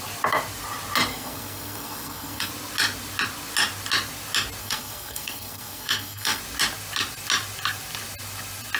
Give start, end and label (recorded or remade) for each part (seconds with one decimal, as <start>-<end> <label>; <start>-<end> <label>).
0.0-1.1 recorded; 1.1-2.5 remade; 2.5-4.6 recorded; 4.6-6.4 remade; 6.4-8.8 recorded